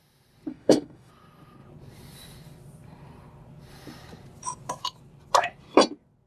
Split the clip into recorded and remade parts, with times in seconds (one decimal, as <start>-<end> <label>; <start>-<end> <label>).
0.0-0.5 recorded; 0.5-1.1 remade; 1.1-6.3 recorded